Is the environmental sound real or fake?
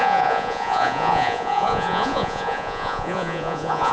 fake